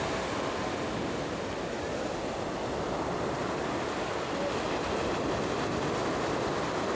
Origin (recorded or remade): recorded